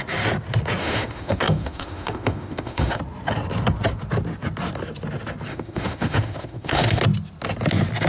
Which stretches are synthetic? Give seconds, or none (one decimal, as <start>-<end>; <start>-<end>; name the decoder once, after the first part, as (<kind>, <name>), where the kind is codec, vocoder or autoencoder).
0.8-3.0 (autoencoder, DAC-VAE); 5.5-7.0